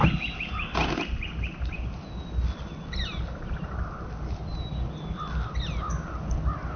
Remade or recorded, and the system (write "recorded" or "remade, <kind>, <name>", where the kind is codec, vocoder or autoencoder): recorded